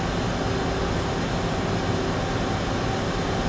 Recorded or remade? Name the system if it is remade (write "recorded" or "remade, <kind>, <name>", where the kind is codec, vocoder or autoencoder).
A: recorded